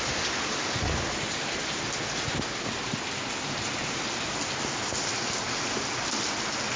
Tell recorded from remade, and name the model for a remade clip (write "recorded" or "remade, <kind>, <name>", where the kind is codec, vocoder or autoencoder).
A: recorded